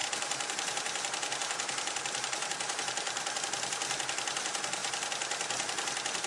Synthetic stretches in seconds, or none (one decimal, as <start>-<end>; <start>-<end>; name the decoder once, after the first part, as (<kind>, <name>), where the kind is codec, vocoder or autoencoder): 0.0-3.4 (vocoder, BigVGAN v2)